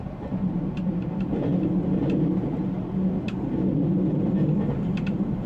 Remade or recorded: recorded